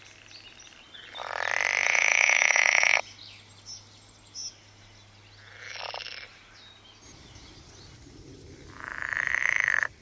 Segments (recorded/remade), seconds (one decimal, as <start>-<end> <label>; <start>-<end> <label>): 0.0-1.8 recorded; 1.8-3.0 remade; 3.0-10.0 recorded